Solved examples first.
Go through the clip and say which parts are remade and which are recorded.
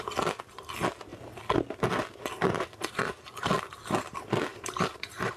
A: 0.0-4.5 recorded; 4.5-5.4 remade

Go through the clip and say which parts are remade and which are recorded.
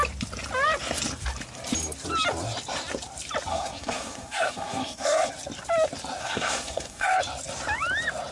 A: 0.0-3.5 recorded; 3.5-5.3 remade; 5.3-6.2 recorded; 6.2-7.2 remade; 7.2-8.3 recorded